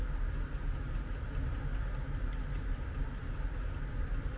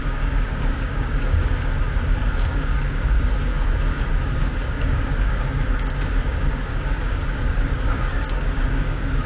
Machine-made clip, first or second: second